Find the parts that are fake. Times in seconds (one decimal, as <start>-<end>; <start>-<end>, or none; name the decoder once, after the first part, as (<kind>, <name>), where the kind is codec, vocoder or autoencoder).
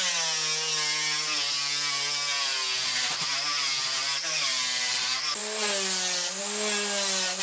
none